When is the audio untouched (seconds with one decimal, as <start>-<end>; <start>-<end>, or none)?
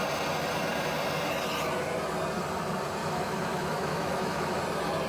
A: 0.0-3.0; 4.6-5.1